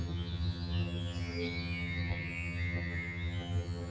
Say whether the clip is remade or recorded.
remade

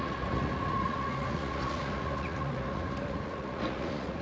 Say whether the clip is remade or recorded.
remade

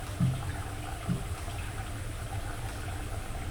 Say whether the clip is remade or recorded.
recorded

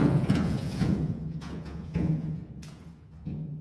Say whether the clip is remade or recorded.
remade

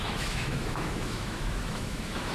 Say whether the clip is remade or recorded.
remade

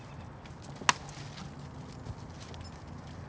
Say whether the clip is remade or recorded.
recorded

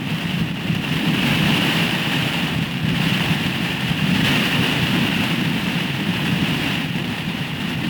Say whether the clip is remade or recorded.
remade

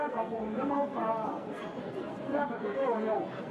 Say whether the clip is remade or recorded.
remade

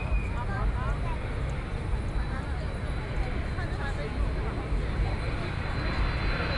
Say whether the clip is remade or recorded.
recorded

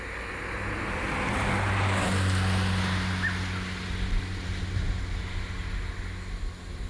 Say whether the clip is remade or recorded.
recorded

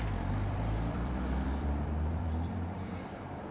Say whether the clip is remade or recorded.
remade